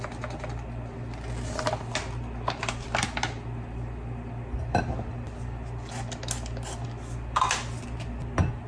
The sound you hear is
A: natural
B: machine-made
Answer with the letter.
A